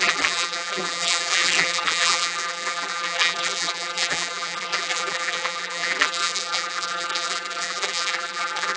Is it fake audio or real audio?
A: fake